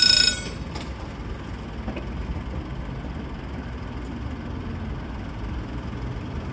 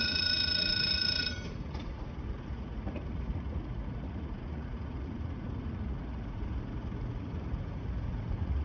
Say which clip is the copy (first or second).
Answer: second